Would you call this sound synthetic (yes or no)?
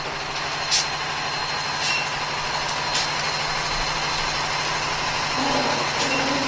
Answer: no